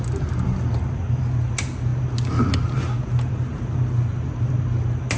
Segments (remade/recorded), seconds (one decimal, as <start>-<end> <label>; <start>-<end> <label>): 0.0-5.2 recorded